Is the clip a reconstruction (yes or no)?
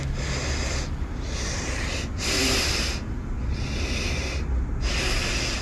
no